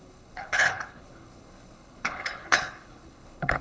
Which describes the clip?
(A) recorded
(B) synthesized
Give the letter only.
B